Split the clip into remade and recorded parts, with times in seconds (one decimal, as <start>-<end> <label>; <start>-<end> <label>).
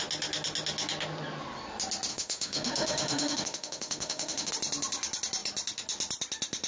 0.0-2.1 recorded; 2.1-4.5 remade; 4.5-6.7 recorded